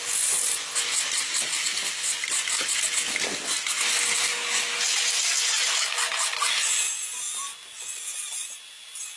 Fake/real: real